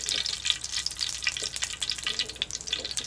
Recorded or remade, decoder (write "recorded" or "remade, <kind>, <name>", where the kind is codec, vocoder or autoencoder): recorded